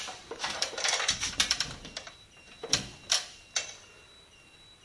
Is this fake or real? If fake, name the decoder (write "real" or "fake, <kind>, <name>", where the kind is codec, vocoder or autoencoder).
real